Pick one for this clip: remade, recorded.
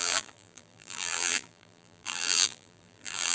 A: remade